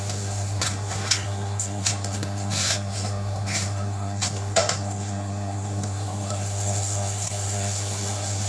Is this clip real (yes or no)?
no